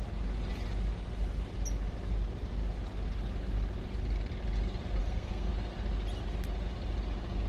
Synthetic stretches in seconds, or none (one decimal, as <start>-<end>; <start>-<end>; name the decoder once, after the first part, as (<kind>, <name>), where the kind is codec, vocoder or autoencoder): 5.0-5.5 (codec, SNAC)